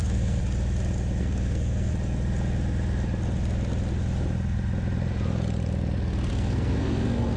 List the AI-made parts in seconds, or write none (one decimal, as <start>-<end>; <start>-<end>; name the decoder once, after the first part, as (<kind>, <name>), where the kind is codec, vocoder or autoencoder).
0.0-0.4 (codec, SNAC); 1.2-1.9; 6.3-7.4

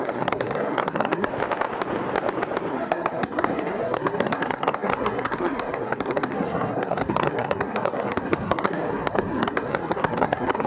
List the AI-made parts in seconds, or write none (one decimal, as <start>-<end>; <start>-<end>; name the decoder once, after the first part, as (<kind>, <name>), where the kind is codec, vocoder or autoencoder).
0.0-1.3 (codec, SNAC); 2.7-10.7